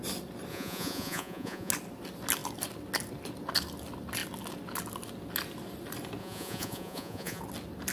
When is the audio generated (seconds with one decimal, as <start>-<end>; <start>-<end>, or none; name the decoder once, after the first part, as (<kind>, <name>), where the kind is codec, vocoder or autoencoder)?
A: 0.5-1.7 (vocoder, Vocos); 6.2-7.4